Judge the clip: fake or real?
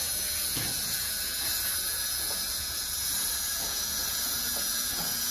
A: fake